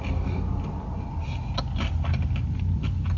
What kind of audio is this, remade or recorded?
recorded